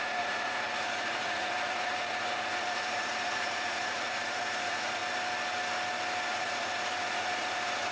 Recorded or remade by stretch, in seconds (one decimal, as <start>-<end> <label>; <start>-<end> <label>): 0.0-5.0 remade; 5.0-6.3 recorded; 6.3-7.9 remade